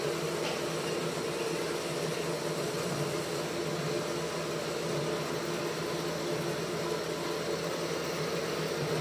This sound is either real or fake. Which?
real